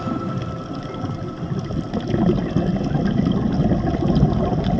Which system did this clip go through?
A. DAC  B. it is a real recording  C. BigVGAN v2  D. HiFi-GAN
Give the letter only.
B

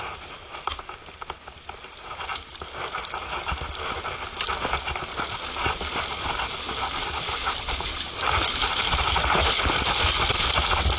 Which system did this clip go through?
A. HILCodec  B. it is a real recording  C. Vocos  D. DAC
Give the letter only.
B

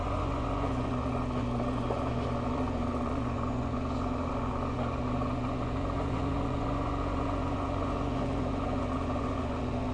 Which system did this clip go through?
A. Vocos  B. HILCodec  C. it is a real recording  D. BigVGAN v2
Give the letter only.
A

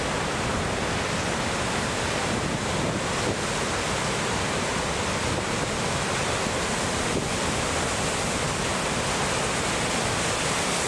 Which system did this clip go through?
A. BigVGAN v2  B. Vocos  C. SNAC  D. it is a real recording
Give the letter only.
D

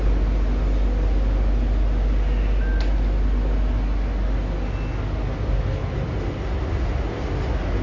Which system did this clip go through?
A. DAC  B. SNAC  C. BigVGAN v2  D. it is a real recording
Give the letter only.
D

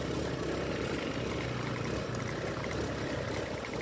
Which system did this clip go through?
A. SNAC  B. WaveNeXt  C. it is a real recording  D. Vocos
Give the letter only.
C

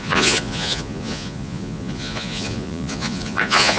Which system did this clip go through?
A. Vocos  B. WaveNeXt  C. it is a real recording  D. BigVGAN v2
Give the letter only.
A